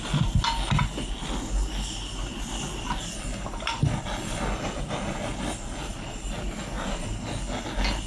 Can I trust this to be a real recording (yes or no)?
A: yes